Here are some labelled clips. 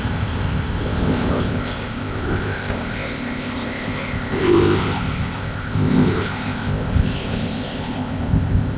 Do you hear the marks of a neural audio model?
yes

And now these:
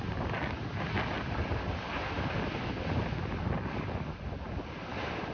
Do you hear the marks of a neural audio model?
no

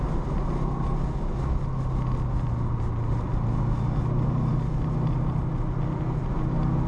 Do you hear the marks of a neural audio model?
no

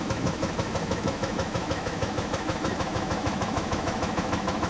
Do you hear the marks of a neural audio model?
yes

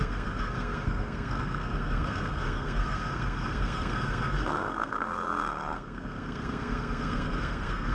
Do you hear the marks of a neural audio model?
yes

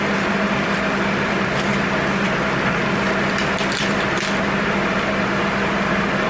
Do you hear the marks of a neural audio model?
no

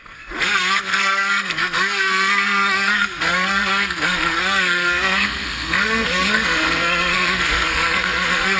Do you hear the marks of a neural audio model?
yes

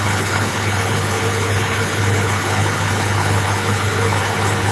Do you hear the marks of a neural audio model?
yes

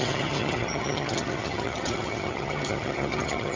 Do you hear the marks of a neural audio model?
yes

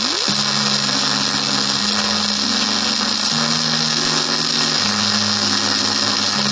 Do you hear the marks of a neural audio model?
no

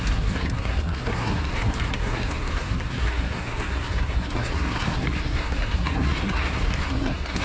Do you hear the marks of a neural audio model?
yes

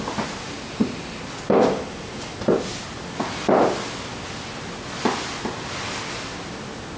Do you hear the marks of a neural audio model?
no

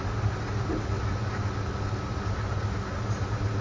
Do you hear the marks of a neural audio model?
no